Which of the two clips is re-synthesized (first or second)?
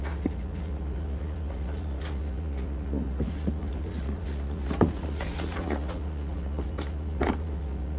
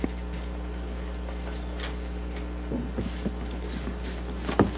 first